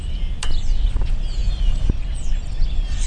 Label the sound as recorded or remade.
recorded